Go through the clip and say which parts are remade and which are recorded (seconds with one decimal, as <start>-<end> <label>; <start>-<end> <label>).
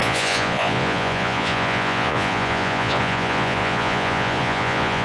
0.0-5.0 remade